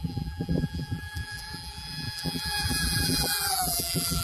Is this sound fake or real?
fake